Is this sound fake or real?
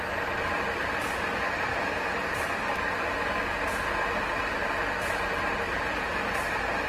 real